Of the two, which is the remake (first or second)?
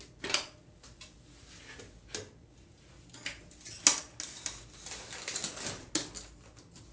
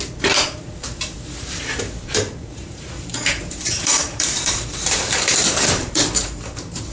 second